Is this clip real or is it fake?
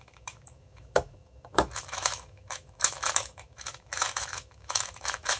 fake